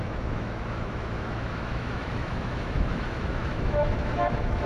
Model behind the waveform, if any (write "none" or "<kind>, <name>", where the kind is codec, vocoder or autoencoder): autoencoder, DAC-VAE